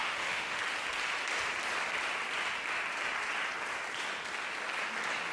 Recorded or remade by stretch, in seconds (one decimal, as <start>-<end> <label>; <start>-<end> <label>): 0.0-0.6 remade; 0.6-5.3 recorded